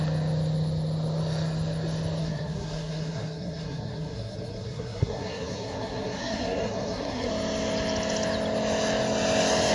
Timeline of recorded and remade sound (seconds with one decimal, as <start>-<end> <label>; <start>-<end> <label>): 0.0-2.2 recorded; 2.2-7.3 remade; 7.3-9.7 recorded